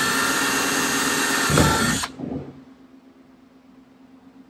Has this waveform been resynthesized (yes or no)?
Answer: no